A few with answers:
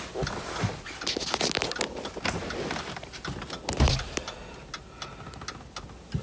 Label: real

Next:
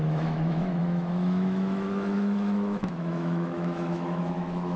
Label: fake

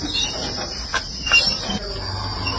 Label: real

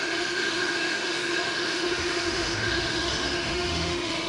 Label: fake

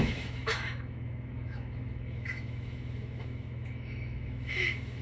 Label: fake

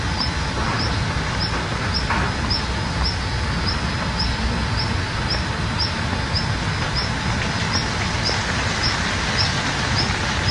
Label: real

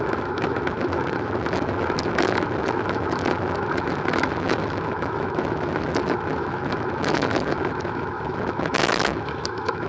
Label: fake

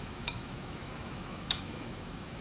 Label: fake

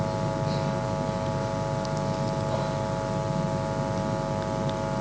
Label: real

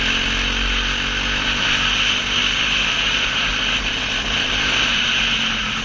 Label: real